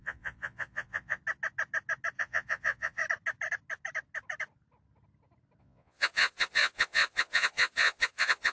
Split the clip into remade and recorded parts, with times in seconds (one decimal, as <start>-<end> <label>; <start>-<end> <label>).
0.0-1.2 remade; 1.2-2.2 recorded; 2.2-3.0 remade; 3.0-5.6 recorded; 5.6-8.5 remade